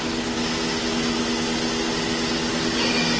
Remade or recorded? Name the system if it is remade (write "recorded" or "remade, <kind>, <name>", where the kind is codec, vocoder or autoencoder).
recorded